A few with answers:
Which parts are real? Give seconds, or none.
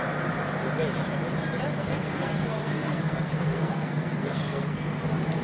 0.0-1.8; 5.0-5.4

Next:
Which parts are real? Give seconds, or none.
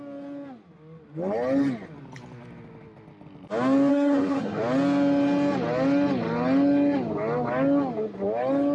0.0-3.9; 4.6-8.7